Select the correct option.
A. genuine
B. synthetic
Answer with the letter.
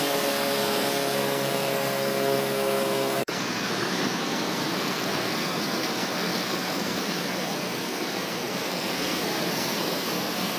B